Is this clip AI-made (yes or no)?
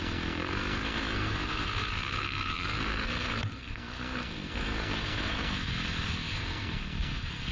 yes